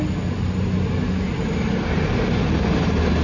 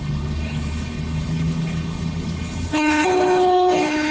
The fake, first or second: second